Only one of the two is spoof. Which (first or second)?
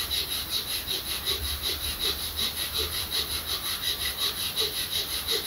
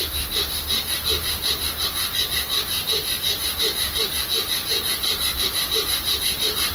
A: first